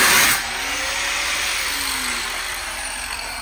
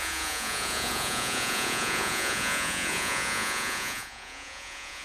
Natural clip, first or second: first